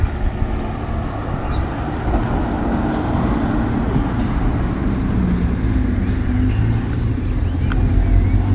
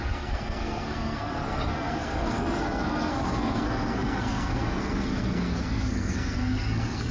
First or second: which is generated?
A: second